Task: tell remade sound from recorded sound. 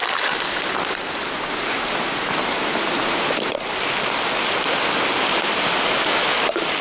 recorded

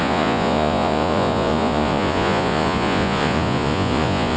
remade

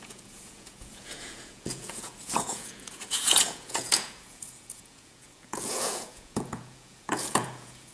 remade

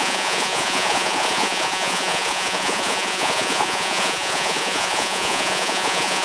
remade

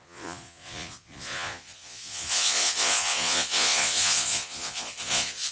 remade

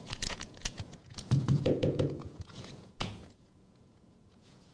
remade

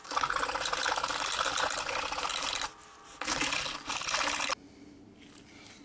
recorded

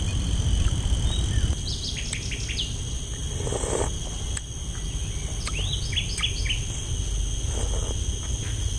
recorded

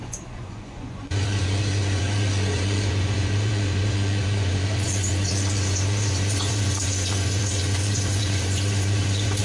remade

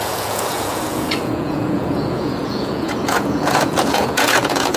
remade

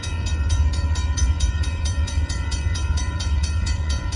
remade